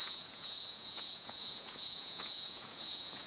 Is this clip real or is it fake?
fake